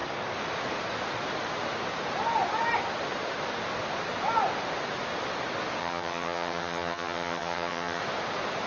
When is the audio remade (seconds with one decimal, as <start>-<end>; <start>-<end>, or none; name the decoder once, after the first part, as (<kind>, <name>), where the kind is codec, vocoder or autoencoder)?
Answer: 5.8-8.0 (vocoder, HiFi-GAN)